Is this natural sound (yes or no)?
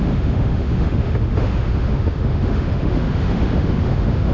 no